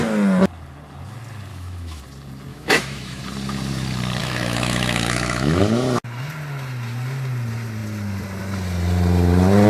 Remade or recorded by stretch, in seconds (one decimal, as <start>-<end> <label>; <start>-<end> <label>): 0.0-1.5 recorded; 1.5-2.0 remade; 2.0-2.5 recorded; 2.5-3.2 remade; 3.2-4.2 recorded; 4.2-5.6 remade; 5.6-9.7 recorded